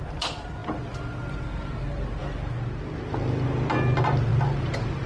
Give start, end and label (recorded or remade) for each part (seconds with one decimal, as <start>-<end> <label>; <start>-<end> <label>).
0.0-5.1 recorded